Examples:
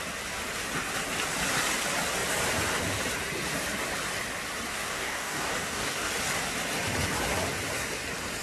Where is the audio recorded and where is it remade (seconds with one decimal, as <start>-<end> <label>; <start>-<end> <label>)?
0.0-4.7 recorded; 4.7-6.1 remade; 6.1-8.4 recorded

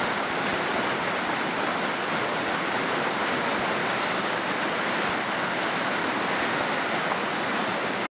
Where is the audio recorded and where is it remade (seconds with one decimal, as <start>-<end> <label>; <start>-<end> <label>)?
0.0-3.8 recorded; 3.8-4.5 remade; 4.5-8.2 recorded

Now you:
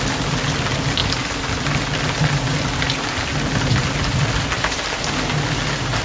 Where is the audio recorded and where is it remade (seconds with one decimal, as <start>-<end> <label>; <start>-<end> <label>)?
0.0-6.0 recorded

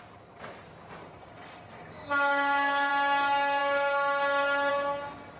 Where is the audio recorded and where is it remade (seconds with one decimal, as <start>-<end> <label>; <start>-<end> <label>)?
0.0-1.0 recorded; 1.0-2.9 remade; 2.9-5.4 recorded

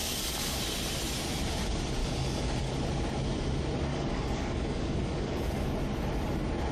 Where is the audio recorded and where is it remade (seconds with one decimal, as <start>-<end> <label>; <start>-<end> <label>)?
0.0-0.6 remade; 0.6-2.0 recorded; 2.0-2.7 remade; 2.7-3.9 recorded; 3.9-5.7 remade; 5.7-6.7 recorded